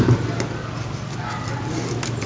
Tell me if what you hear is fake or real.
real